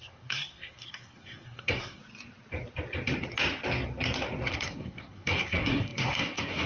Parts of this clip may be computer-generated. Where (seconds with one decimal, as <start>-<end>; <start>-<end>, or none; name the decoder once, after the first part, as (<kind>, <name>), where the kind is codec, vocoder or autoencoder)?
0.0-2.0 (codec, SNAC); 4.5-6.7